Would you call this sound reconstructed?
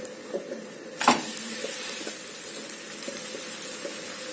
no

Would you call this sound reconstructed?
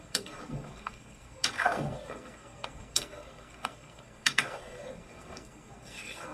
yes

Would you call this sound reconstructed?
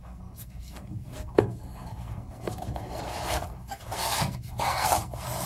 yes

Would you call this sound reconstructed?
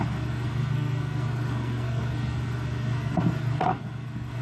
yes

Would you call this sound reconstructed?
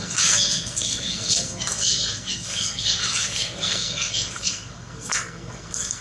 yes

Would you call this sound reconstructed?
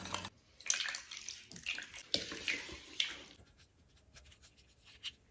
no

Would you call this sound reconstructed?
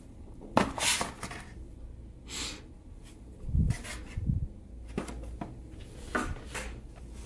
no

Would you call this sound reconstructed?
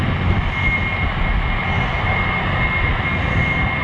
no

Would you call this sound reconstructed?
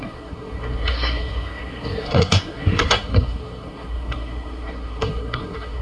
yes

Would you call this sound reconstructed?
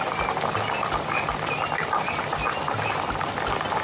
no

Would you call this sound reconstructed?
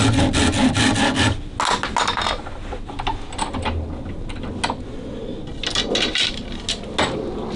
no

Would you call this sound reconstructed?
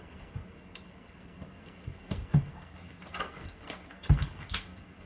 yes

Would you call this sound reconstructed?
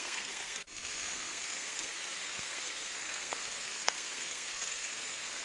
yes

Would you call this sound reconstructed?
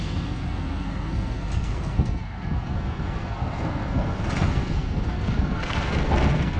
yes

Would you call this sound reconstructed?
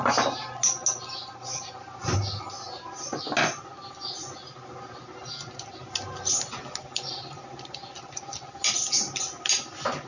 no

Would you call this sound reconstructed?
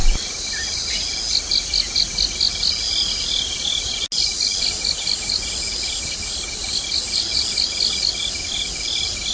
no